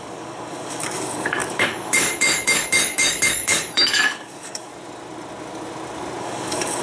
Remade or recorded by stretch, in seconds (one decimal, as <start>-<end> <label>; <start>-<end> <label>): 0.0-4.7 remade; 4.7-6.2 recorded; 6.2-6.8 remade